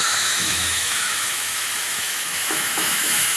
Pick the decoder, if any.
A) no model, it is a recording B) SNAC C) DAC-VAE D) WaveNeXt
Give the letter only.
C